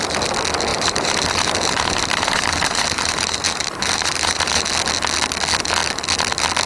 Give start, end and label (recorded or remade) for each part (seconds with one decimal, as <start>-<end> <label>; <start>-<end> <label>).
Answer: 0.0-0.7 recorded; 0.7-4.7 remade; 4.7-6.7 recorded